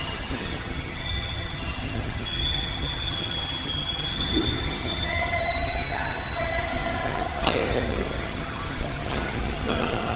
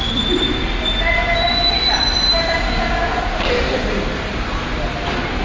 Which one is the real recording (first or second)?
second